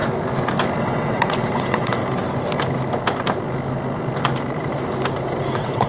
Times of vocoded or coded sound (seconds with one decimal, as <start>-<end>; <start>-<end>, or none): 0.8-2.0; 5.5-5.9